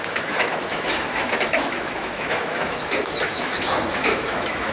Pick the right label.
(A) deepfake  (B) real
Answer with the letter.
A